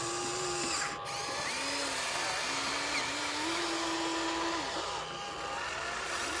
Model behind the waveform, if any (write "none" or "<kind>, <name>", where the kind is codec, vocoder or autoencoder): none